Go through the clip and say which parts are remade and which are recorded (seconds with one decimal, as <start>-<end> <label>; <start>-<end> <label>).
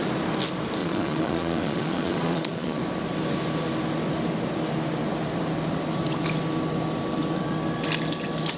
0.0-0.8 recorded; 0.8-2.8 remade; 2.8-8.6 recorded